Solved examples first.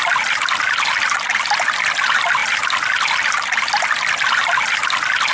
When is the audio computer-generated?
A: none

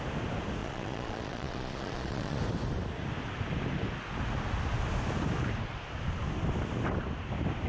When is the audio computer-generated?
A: 0.6-2.4 (vocoder, Vocos)

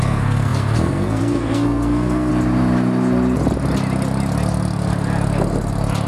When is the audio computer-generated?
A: 0.0-2.3 (codec, SNAC)

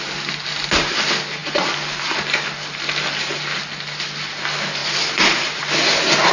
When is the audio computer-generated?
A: 4.8-5.6 (vocoder, BigVGAN v2)

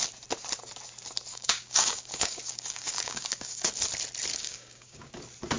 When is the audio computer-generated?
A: 1.3-3.7 (codec, DAC); 4.3-5.1

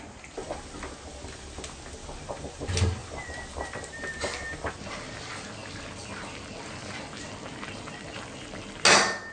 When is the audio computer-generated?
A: none

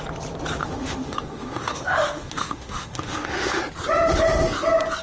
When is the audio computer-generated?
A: 0.6-3.6 (autoencoder, DAC-VAE)